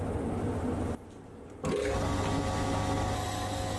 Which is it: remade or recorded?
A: recorded